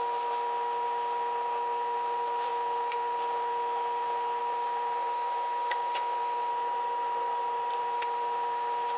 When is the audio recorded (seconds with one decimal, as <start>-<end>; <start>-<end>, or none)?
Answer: 6.5-7.8